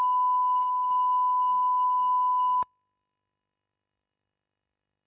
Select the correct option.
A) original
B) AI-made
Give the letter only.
B